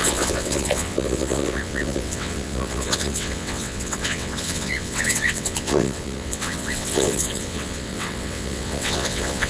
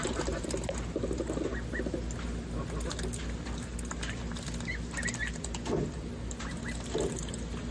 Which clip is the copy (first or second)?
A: first